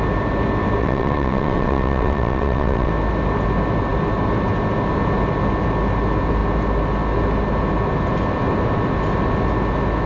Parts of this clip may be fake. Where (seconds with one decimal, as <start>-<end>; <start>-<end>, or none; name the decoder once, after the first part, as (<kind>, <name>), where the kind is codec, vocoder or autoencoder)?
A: 0.8-2.9 (vocoder, WaveNeXt)